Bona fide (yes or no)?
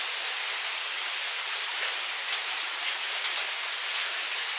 yes